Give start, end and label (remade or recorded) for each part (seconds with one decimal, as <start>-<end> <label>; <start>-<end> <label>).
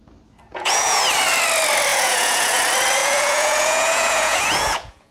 0.0-0.5 recorded; 0.5-1.0 remade; 1.0-1.9 recorded; 1.9-2.6 remade; 2.6-3.0 recorded; 3.0-5.1 remade